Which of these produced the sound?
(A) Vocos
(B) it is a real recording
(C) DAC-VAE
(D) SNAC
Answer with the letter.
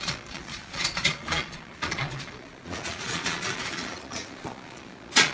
A